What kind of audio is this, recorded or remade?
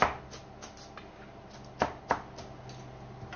recorded